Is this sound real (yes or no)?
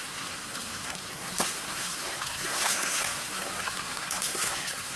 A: no